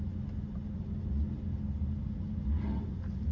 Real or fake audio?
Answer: real